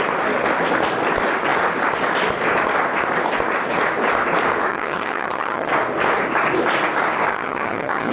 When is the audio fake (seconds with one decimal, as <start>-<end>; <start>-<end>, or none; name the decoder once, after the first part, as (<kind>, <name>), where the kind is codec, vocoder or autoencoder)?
4.7-5.7 (vocoder, HiFi-GAN); 7.3-8.1